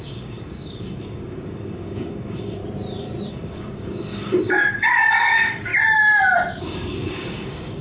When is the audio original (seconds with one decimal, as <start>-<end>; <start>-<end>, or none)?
2.6-3.3; 5.7-6.6